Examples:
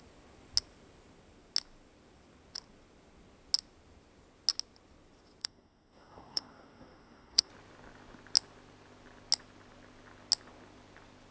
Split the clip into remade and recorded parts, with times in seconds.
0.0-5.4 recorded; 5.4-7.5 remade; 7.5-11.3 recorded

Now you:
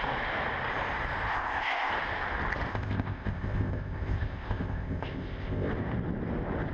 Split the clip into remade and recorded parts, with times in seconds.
0.0-1.3 recorded; 1.3-1.9 remade; 1.9-2.7 recorded; 2.7-5.7 remade; 5.7-6.7 recorded

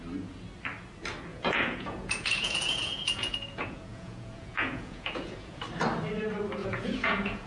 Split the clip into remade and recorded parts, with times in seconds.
0.0-1.3 recorded; 1.3-5.6 remade; 5.6-6.6 recorded; 6.6-7.5 remade

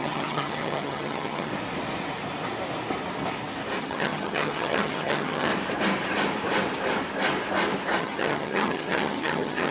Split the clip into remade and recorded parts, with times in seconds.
0.0-1.5 remade; 1.5-3.8 recorded; 3.8-5.5 remade; 5.5-8.0 recorded; 8.0-9.7 remade

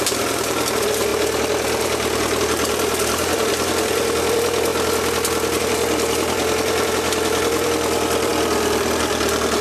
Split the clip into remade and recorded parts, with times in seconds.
0.0-4.7 remade; 4.7-5.6 recorded; 5.6-9.6 remade

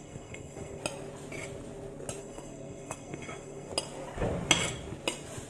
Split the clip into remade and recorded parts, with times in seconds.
0.0-0.8 remade; 0.8-2.2 recorded; 2.2-3.7 remade; 3.7-5.5 recorded

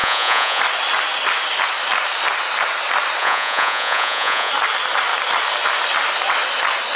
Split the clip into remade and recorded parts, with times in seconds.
0.0-0.6 remade; 0.6-3.2 recorded; 3.2-4.5 remade; 4.5-7.0 recorded

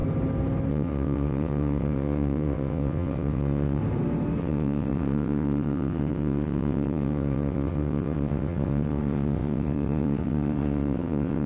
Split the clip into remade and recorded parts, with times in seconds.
0.0-0.7 recorded; 0.7-3.8 remade; 3.8-4.4 recorded; 4.4-11.5 remade